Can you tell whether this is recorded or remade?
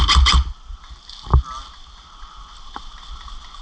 recorded